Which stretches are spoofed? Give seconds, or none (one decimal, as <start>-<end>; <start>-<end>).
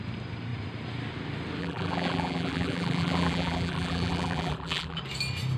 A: 1.6-5.0